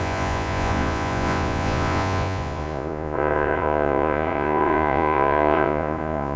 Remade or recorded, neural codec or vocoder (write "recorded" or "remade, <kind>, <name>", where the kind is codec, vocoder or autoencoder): remade, vocoder, Vocos